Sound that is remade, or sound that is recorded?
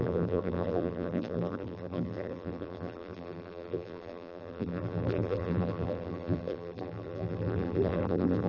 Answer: remade